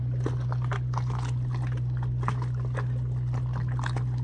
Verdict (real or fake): real